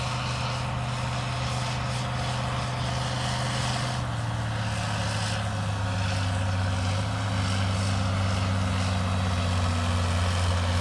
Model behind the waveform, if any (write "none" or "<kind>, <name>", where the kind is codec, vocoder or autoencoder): none